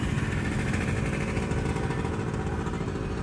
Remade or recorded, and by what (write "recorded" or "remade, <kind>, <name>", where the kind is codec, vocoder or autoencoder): recorded